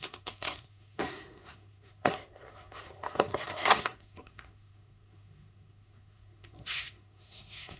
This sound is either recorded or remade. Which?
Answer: remade